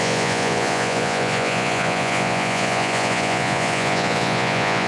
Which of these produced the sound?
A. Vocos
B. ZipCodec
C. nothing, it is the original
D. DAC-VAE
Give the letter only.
A